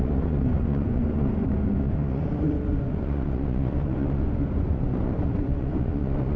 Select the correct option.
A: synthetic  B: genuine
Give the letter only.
A